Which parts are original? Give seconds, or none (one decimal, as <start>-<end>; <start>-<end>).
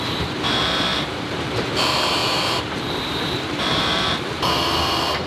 none